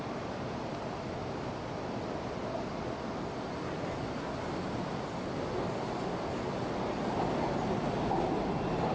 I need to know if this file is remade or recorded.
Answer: recorded